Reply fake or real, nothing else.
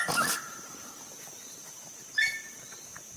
fake